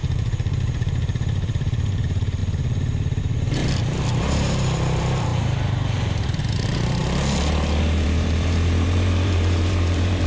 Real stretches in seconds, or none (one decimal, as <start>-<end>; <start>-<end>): 2.4-3.2; 3.6-4.2; 7.0-7.8